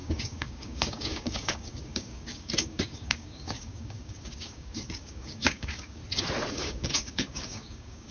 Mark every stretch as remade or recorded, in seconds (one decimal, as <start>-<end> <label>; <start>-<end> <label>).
0.0-6.0 remade; 6.0-6.5 recorded; 6.5-8.1 remade